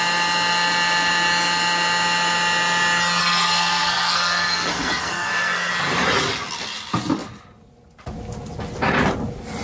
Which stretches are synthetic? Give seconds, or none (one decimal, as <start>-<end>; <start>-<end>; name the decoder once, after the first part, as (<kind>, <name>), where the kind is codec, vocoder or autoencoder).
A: 3.2-5.7 (codec, SNAC)